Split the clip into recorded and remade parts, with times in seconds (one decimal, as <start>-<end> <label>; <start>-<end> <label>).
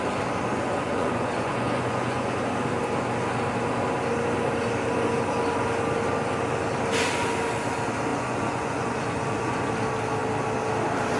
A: 0.0-0.5 recorded; 0.5-2.4 remade; 2.4-8.1 recorded; 8.1-9.7 remade; 9.7-11.2 recorded